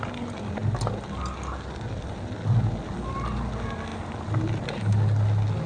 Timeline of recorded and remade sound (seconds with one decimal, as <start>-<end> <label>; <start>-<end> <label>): 0.0-5.7 recorded